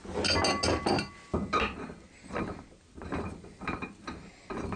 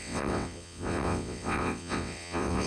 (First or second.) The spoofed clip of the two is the second